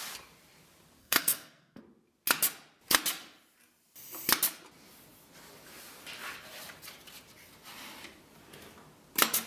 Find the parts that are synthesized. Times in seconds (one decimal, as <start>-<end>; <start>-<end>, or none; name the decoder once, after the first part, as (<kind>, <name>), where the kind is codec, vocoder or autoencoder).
1.0-1.8 (codec, SNAC)